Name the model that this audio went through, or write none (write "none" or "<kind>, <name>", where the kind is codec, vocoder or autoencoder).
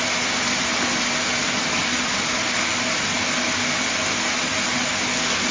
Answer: none